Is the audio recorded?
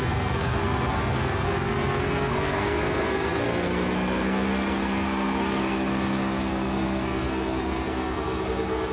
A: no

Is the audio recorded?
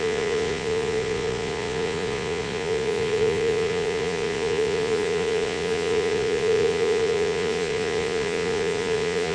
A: no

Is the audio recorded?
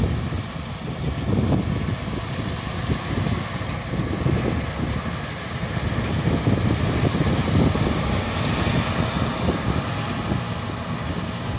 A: yes